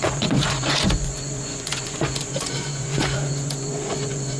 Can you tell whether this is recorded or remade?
remade